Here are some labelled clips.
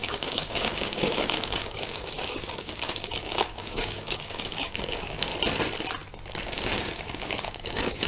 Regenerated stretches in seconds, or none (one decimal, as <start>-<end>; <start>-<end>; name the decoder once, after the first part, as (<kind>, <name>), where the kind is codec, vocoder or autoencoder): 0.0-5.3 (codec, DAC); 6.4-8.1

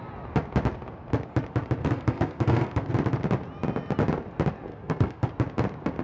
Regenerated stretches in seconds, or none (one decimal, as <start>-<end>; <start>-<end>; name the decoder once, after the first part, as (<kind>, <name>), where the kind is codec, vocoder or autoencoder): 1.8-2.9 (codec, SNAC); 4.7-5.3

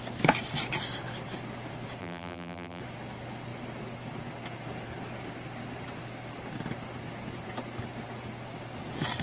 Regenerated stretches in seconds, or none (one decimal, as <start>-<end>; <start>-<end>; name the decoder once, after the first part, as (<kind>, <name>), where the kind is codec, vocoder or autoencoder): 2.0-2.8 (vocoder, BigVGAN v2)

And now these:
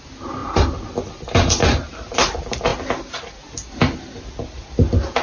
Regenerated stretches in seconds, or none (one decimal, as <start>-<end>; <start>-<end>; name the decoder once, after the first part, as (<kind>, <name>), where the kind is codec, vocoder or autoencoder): none

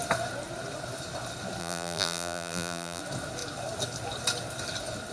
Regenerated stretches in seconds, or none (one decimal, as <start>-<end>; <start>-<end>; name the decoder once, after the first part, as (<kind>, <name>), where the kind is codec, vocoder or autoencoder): 1.6-3.0 (vocoder, BigVGAN v2)

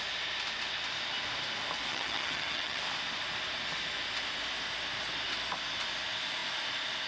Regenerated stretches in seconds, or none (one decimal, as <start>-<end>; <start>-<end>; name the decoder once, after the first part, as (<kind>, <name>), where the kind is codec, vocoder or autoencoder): 1.9-2.8 (vocoder, HiFi-GAN)

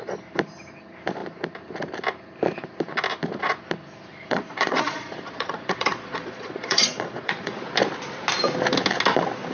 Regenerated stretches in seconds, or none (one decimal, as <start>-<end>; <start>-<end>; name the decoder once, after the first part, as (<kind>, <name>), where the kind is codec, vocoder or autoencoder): 4.1-7.6 (vocoder, Vocos)